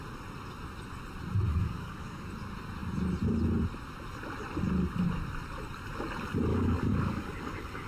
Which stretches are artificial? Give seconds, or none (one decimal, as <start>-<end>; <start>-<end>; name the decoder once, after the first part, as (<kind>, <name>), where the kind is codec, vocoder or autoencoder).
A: 1.5-2.3 (codec, DAC); 6.5-7.9